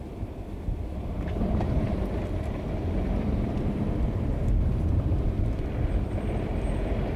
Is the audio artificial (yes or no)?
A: yes